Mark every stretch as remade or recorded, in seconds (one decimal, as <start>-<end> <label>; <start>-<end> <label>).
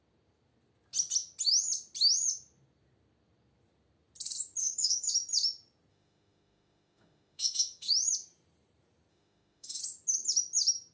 0.0-4.6 recorded; 4.6-5.1 remade; 5.1-5.9 recorded; 5.9-7.9 remade; 7.9-9.1 recorded; 9.1-9.8 remade; 9.8-10.9 recorded